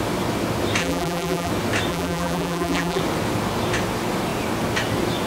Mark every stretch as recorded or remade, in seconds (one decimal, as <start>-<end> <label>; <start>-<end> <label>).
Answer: 0.0-0.8 recorded; 0.8-1.5 remade; 1.5-1.9 recorded; 1.9-3.0 remade; 3.0-5.3 recorded